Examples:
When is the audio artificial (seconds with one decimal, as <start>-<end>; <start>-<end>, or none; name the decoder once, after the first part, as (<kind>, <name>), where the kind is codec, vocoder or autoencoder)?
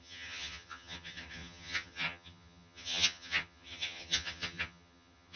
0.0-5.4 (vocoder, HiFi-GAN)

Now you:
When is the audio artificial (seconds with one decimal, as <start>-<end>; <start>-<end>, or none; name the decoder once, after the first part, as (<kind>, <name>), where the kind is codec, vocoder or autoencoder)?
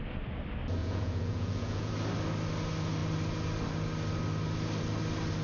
0.8-1.9 (vocoder, Vocos)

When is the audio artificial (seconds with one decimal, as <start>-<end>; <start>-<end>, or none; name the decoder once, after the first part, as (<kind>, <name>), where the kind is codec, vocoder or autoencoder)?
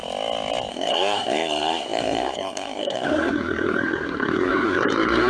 0.7-5.3 (codec, SNAC)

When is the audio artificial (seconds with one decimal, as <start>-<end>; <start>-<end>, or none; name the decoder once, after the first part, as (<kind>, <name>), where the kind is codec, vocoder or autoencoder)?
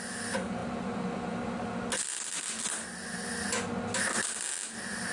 none